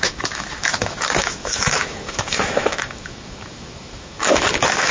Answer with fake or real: fake